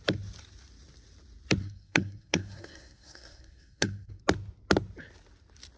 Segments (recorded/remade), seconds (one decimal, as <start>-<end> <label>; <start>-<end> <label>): 0.0-1.6 recorded; 1.6-4.2 remade; 4.2-5.8 recorded